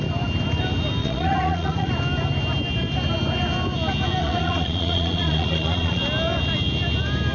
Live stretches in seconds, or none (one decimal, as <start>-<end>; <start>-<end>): 0.0-1.0; 1.9-4.2; 6.0-7.3